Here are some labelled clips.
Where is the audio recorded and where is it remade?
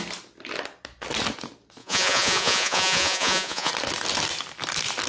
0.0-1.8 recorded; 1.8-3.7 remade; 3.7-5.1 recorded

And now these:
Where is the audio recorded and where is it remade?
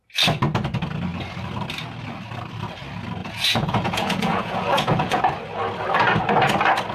0.0-3.2 recorded; 3.2-5.2 remade; 5.2-6.9 recorded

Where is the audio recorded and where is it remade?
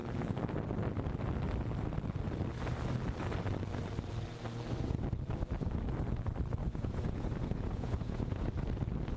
0.0-6.6 recorded; 6.6-8.5 remade; 8.5-9.2 recorded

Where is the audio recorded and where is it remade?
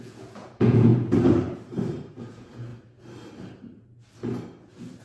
0.0-0.9 remade; 0.9-2.2 recorded; 2.2-2.7 remade; 2.7-5.0 recorded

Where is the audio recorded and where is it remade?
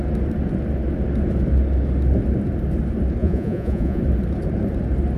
0.0-3.2 recorded; 3.2-4.0 remade; 4.0-5.2 recorded